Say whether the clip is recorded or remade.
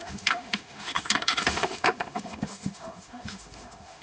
remade